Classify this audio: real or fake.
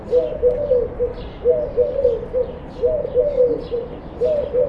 real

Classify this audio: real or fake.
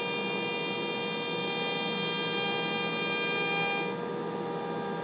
real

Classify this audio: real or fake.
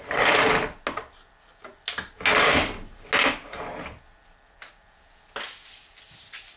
real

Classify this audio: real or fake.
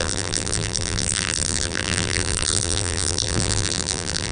fake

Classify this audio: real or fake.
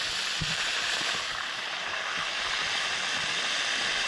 real